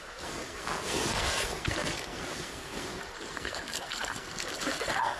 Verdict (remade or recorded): remade